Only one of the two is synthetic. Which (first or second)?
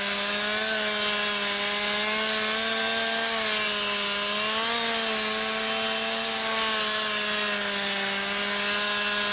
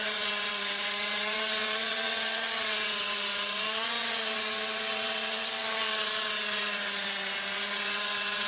second